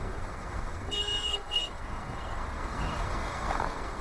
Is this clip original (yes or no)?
no